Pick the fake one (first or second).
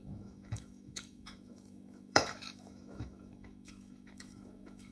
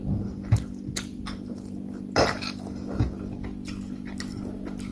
first